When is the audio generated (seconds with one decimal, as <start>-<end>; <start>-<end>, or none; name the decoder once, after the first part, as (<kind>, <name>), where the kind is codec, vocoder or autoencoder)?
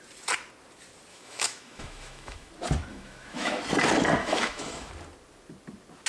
1.1-2.5 (autoencoder, DAC-VAE); 2.9-3.6; 4.2-4.9